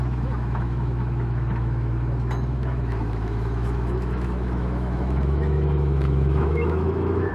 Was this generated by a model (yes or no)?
yes